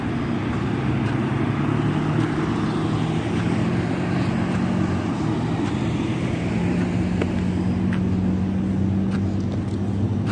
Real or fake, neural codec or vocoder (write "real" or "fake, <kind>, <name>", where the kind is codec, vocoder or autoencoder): real